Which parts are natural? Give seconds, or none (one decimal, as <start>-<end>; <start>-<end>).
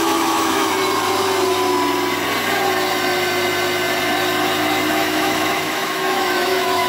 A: 0.8-4.9